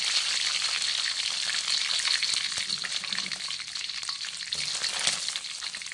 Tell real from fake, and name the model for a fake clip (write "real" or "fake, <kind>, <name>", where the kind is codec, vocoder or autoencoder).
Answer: real